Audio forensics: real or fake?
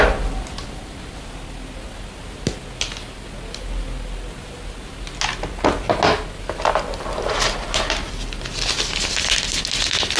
real